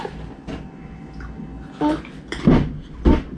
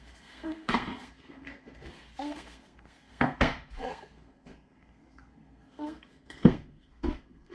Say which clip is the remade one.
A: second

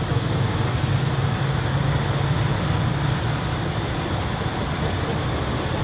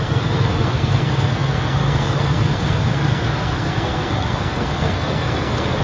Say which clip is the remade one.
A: second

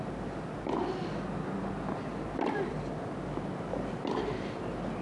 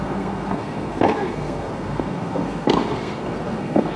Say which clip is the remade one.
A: second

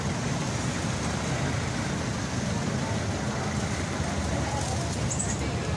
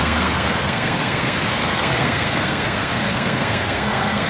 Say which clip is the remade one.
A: second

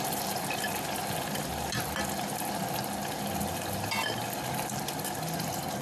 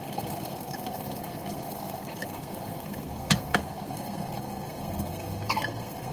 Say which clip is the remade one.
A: second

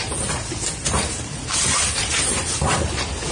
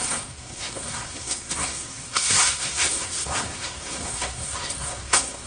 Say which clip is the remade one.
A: second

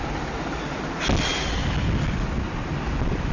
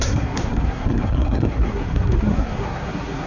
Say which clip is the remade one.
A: second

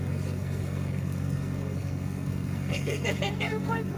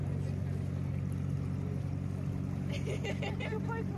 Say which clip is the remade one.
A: first